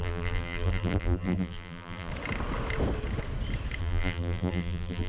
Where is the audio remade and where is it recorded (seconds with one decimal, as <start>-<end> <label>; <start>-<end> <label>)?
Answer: 0.0-2.1 remade; 2.1-3.8 recorded; 3.8-5.1 remade